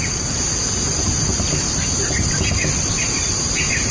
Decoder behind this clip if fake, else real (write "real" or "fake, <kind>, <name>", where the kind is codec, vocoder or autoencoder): real